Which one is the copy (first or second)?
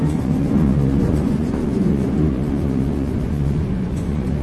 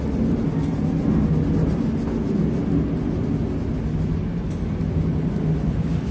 first